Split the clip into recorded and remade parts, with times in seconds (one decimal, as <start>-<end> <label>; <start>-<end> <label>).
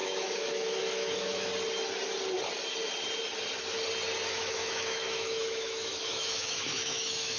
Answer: 0.0-1.5 remade; 1.5-4.3 recorded; 4.3-7.4 remade